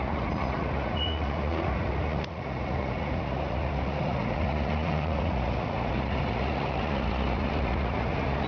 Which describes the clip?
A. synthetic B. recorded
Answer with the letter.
A